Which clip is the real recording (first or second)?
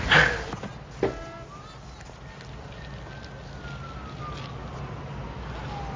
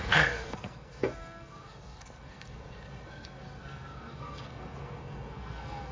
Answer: first